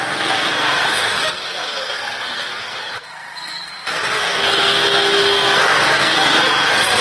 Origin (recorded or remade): remade